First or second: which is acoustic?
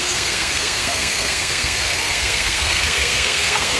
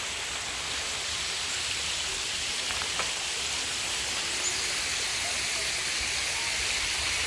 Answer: second